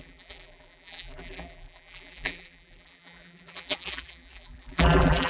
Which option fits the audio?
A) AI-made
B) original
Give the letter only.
A